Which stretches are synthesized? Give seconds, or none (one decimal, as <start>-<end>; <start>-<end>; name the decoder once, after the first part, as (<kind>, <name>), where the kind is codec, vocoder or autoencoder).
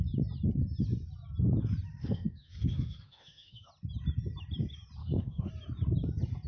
2.0-3.7 (autoencoder, DAC-VAE); 5.0-5.5